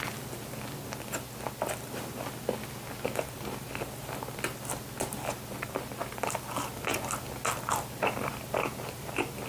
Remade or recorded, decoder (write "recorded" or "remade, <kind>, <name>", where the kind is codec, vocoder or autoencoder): recorded